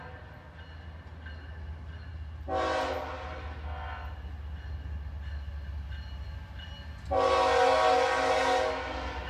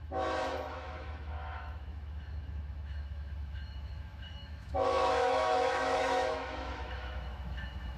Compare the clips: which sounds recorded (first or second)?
first